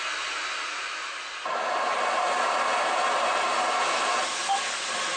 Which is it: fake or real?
real